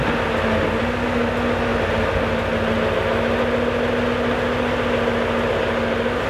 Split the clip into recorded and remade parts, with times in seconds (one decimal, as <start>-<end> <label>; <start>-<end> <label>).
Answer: 0.0-6.3 recorded